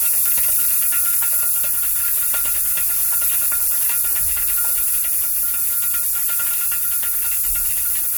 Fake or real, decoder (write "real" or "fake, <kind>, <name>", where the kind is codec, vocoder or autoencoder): real